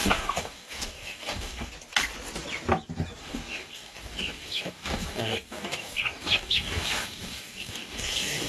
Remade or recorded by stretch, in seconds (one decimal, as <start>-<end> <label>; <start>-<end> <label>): 0.0-1.7 remade; 1.7-3.2 recorded; 3.2-8.5 remade